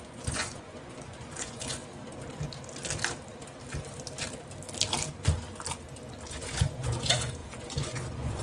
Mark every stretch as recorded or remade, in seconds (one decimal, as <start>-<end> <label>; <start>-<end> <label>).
0.0-1.8 remade; 1.8-6.3 recorded; 6.3-8.4 remade